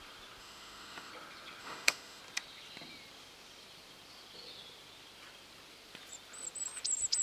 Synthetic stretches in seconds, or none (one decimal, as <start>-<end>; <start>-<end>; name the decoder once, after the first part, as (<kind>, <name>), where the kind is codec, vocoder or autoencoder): 0.4-1.1 (autoencoder, DAC-VAE); 1.6-2.2

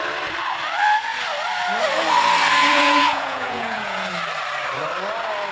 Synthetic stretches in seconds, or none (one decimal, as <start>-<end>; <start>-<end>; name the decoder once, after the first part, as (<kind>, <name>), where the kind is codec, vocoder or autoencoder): 2.6-4.1 (vocoder, Vocos)

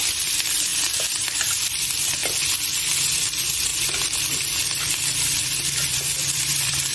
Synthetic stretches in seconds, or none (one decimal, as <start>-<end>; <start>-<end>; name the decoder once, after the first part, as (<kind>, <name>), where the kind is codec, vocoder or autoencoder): 0.0-0.7 (vocoder, BigVGAN v2); 1.7-2.2; 3.0-3.7; 4.6-6.9

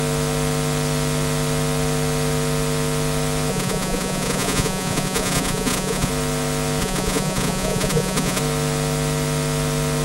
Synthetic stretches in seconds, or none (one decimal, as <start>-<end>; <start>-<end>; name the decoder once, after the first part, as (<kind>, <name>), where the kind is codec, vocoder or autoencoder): 3.5-6.1 (vocoder, Vocos); 6.8-8.4

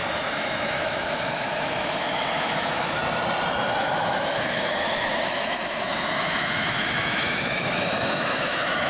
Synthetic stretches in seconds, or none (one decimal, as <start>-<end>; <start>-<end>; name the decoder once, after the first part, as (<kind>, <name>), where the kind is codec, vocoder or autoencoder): 0.0-3.0 (autoencoder, DAC-VAE); 3.8-8.9

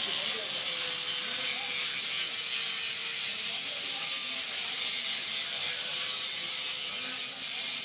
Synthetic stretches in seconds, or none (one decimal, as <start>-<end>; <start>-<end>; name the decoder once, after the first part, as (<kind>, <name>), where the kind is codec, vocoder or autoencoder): none

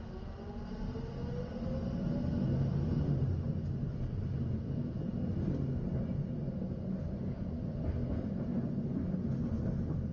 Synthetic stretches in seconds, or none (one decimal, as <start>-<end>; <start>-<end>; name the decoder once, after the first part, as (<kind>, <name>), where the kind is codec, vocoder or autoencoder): none

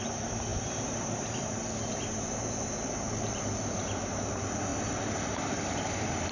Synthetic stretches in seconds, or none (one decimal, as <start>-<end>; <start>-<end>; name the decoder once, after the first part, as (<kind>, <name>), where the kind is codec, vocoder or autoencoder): 0.5-4.3 (vocoder, BigVGAN v2)